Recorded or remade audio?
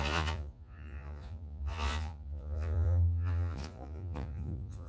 remade